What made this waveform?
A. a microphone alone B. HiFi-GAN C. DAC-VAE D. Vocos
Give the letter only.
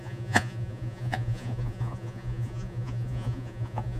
D